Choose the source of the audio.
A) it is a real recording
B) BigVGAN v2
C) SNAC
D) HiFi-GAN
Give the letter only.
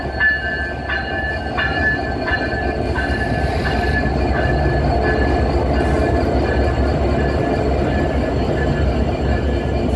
A